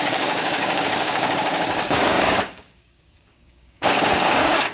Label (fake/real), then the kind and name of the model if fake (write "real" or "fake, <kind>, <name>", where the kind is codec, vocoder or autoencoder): fake, codec, DAC